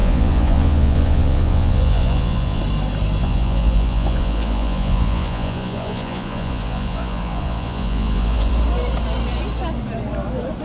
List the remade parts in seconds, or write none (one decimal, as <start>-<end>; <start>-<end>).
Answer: 0.0-2.6; 3.2-8.5